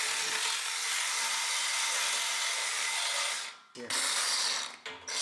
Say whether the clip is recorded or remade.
recorded